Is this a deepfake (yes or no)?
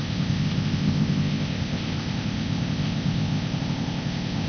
yes